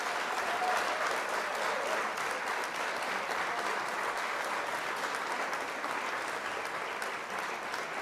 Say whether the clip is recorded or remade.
recorded